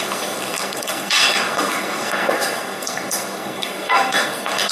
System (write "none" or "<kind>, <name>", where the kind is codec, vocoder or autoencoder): codec, SNAC